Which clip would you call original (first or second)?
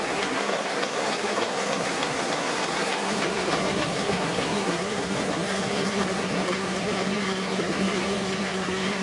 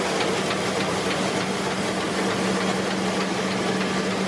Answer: second